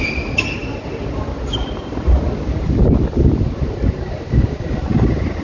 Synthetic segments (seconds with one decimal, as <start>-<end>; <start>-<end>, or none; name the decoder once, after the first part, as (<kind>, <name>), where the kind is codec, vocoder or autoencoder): none